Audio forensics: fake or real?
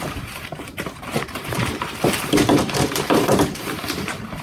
fake